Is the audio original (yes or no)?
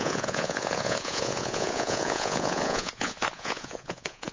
no